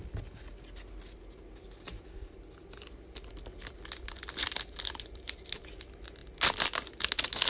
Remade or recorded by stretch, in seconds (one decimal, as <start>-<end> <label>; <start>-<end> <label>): 0.0-7.5 recorded